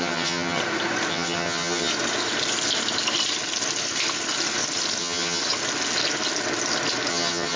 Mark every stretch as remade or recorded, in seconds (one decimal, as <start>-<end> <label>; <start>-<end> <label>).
0.0-0.6 remade; 0.6-1.1 recorded; 1.1-1.9 remade; 1.9-5.0 recorded; 5.0-5.4 remade; 5.4-7.1 recorded; 7.1-7.6 remade